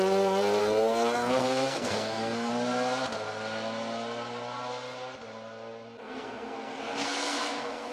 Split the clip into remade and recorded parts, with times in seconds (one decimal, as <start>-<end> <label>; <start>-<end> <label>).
0.0-0.6 recorded; 0.6-2.5 remade; 2.5-6.0 recorded; 6.0-7.9 remade